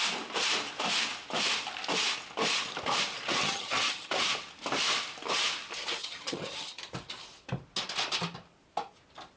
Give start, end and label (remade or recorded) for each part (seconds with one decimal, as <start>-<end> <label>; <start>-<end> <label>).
0.0-3.4 recorded; 3.4-4.1 remade; 4.1-6.0 recorded; 6.0-6.8 remade; 6.8-9.4 recorded